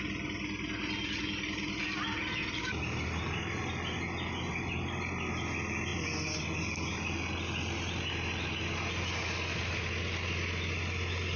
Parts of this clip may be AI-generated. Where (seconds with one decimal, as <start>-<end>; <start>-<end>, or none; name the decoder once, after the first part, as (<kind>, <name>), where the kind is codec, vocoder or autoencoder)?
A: none